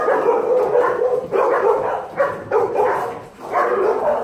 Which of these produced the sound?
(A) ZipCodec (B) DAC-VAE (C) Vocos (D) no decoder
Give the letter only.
D